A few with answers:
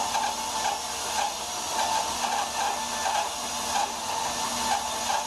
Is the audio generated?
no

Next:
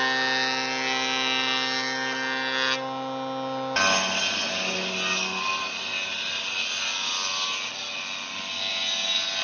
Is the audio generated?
no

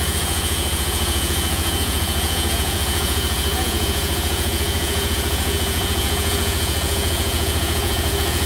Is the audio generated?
yes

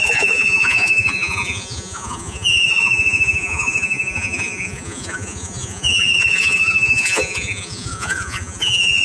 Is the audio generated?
yes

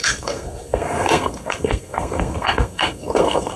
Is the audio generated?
yes